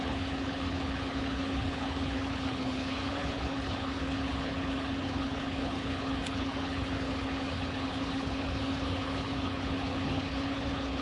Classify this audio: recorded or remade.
remade